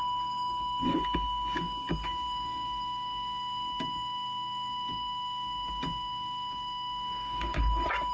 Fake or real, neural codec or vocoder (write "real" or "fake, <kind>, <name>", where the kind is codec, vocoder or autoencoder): fake, codec, DAC